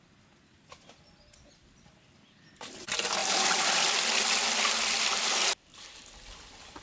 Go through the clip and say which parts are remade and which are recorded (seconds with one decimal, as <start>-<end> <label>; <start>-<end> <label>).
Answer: 0.0-6.8 recorded